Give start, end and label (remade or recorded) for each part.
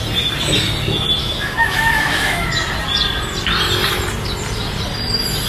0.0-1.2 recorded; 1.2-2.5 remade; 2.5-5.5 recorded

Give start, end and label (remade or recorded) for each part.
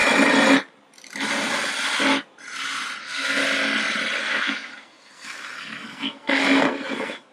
0.0-3.0 recorded; 3.0-3.4 remade; 3.4-4.2 recorded; 4.2-7.3 remade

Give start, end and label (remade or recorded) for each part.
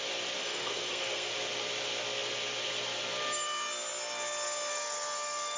0.0-0.4 recorded; 0.4-1.3 remade; 1.3-4.7 recorded; 4.7-5.6 remade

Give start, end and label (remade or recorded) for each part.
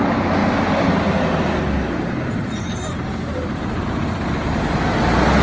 0.0-5.4 recorded